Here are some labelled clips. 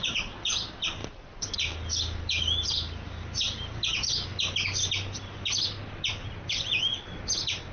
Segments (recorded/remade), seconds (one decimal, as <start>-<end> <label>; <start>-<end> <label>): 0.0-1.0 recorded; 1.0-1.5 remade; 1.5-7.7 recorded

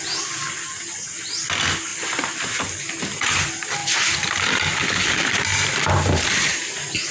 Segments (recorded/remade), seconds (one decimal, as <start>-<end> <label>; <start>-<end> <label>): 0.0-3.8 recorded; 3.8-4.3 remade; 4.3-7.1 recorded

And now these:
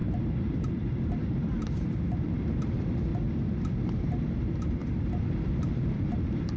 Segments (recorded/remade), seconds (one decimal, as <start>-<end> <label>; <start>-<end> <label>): 0.0-3.1 remade; 3.1-4.0 recorded; 4.0-4.8 remade; 4.8-5.7 recorded; 5.7-6.6 remade

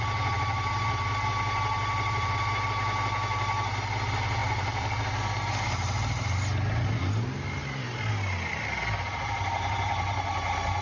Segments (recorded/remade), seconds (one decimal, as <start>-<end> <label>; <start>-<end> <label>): 0.0-4.4 recorded; 4.4-5.0 remade; 5.0-7.6 recorded; 7.6-8.1 remade; 8.1-10.8 recorded

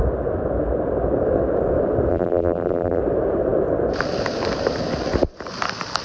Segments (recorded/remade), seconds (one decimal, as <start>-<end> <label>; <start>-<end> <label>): 0.0-2.1 recorded; 2.1-3.0 remade; 3.0-6.0 recorded

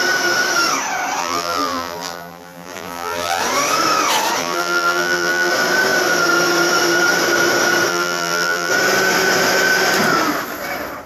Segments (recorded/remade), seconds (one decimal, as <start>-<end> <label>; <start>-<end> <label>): 0.0-1.2 recorded; 1.2-3.4 remade; 3.4-4.4 recorded; 4.4-5.5 remade; 5.5-7.9 recorded; 7.9-8.7 remade; 8.7-11.1 recorded

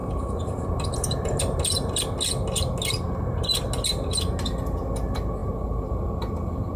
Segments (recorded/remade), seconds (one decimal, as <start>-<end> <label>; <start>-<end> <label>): 0.0-2.0 remade; 2.0-5.4 recorded; 5.4-5.9 remade; 5.9-6.8 recorded